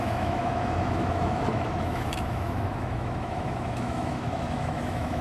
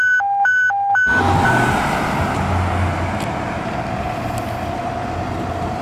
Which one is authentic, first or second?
second